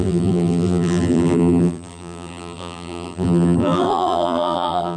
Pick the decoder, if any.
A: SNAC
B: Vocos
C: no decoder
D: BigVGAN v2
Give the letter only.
D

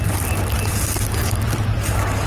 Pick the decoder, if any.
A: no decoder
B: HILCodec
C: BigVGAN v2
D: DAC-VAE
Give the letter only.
A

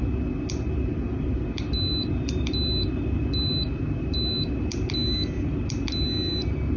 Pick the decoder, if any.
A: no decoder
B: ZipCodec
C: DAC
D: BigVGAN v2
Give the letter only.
A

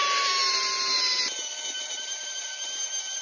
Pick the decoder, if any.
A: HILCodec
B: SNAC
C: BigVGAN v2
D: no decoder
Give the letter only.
D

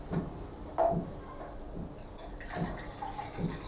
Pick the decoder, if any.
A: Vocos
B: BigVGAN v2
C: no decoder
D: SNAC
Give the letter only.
C